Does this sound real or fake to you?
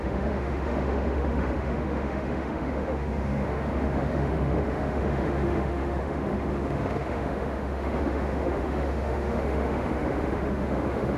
fake